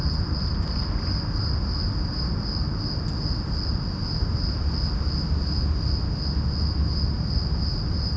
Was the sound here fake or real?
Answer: real